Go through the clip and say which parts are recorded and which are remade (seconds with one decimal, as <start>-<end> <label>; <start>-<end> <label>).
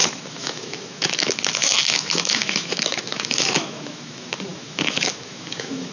0.0-5.9 remade